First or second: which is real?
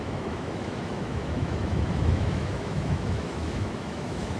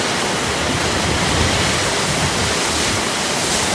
second